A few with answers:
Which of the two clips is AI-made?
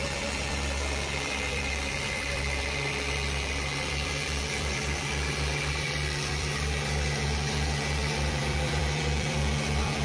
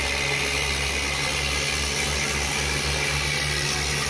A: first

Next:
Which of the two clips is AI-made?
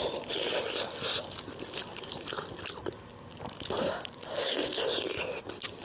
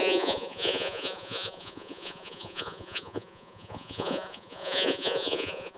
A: second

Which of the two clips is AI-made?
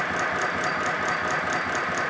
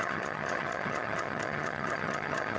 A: second